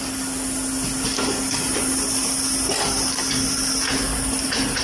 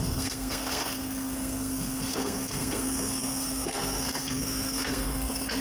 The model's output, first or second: second